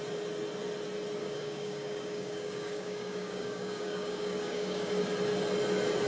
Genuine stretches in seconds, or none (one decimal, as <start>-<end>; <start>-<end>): 0.0-1.2; 4.9-6.1